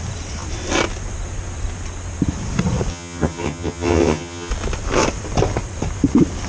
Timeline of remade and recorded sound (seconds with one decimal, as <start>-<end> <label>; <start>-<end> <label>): 0.0-2.9 recorded; 2.9-4.5 remade; 4.5-6.5 recorded